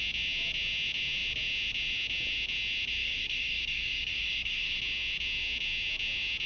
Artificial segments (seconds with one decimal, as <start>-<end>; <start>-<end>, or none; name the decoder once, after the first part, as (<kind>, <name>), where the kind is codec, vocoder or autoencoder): 3.0-4.8 (codec, DAC)